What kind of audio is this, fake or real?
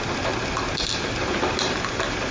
real